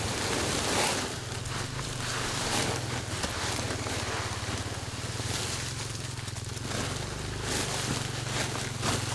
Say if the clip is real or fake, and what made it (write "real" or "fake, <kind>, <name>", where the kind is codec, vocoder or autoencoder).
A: real